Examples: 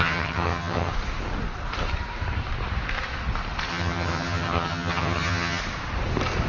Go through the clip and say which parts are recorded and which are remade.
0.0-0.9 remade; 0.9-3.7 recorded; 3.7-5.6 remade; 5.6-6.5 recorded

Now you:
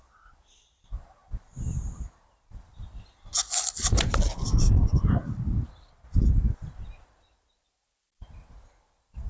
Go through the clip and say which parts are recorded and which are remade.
0.0-9.3 recorded